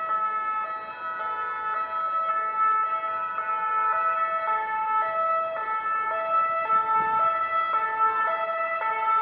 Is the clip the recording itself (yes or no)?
yes